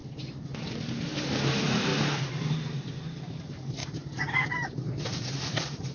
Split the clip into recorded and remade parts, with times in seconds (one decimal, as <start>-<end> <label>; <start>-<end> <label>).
0.0-0.6 recorded; 0.6-1.9 remade; 1.9-3.0 recorded; 3.0-3.8 remade; 3.8-4.7 recorded; 4.7-5.9 remade